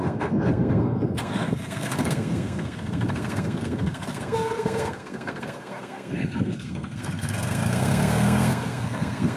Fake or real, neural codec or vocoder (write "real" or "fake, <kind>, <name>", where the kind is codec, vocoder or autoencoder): fake, codec, SNAC